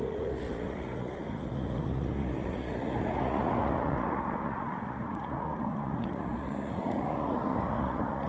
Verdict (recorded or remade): remade